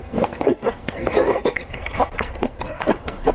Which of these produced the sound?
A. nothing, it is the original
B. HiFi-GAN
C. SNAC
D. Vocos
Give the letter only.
C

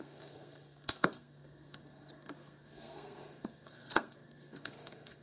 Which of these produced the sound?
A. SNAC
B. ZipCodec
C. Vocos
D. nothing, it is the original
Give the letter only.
A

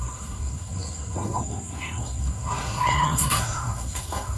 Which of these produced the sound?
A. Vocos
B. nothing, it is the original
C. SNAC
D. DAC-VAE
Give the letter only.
C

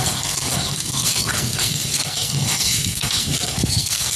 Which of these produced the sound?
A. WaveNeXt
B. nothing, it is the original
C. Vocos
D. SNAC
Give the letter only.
D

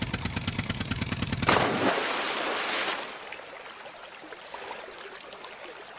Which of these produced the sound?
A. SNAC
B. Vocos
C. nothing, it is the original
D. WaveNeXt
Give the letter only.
C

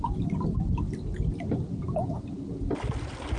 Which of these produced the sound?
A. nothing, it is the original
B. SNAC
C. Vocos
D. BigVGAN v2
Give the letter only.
A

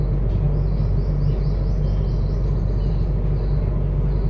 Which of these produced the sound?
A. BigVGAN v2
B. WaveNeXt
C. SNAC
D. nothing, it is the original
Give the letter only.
D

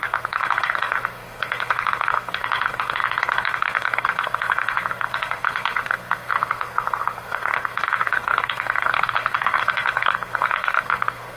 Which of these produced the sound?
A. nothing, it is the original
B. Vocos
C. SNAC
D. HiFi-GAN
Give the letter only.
C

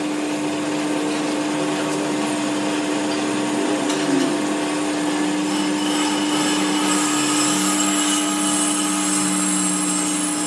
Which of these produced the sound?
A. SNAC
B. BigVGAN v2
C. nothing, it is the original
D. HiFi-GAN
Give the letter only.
C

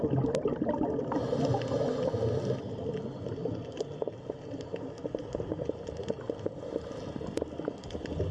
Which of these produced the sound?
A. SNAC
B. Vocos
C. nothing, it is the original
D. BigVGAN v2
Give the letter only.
C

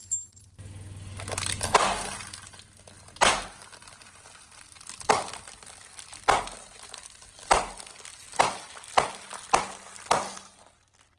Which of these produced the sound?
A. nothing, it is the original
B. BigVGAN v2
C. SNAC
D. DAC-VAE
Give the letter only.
A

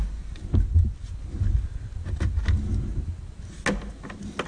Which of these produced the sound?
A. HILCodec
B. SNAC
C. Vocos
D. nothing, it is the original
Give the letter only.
D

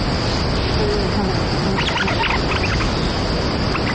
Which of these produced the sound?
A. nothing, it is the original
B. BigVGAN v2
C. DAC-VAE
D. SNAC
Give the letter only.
A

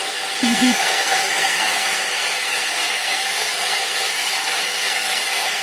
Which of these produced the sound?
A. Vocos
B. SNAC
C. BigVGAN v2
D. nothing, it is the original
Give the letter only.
B